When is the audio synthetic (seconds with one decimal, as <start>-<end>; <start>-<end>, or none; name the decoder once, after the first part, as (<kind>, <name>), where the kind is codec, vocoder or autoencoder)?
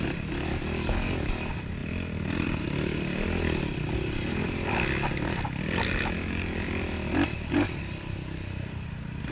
0.5-1.3 (codec, DAC); 7.3-7.9